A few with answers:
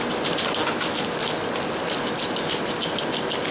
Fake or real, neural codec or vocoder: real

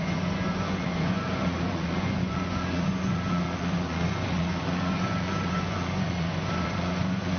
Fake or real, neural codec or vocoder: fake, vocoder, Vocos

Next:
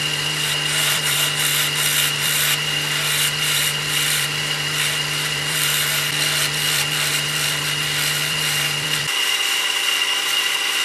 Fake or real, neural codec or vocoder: fake, vocoder, BigVGAN v2